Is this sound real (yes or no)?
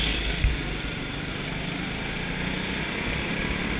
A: yes